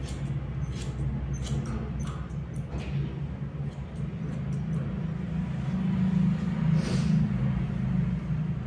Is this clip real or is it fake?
real